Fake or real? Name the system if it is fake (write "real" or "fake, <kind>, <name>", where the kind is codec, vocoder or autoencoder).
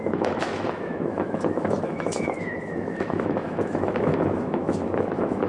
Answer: fake, autoencoder, DAC-VAE